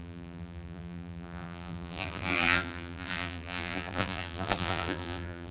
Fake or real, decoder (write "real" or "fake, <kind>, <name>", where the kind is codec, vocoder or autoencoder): fake, vocoder, BigVGAN v2